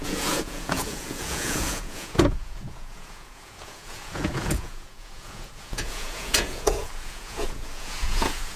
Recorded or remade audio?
remade